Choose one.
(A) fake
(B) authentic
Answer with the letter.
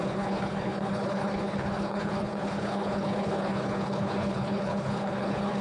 A